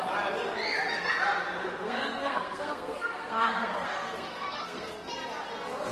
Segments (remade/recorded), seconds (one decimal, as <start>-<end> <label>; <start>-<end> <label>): 0.0-1.6 recorded; 1.6-5.1 remade; 5.1-5.9 recorded